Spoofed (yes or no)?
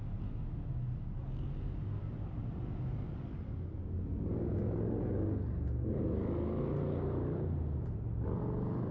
no